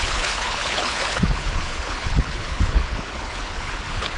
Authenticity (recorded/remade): remade